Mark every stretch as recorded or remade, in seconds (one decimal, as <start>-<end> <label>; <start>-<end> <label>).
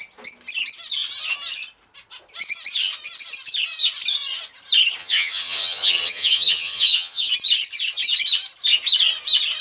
0.0-5.0 recorded; 5.0-7.3 remade; 7.3-9.6 recorded